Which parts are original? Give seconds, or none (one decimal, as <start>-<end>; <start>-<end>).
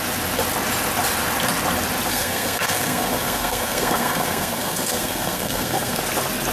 0.0-2.1; 6.0-6.5